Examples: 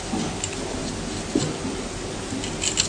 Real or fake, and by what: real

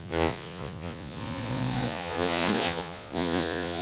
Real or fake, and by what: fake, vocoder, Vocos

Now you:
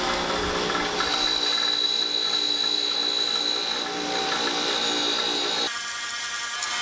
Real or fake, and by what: real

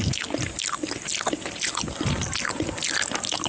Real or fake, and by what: real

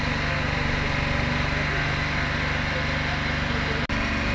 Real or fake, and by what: real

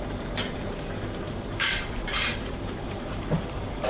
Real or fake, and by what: fake, vocoder, BigVGAN v2